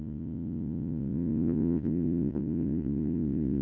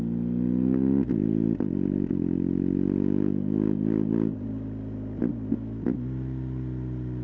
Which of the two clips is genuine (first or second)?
second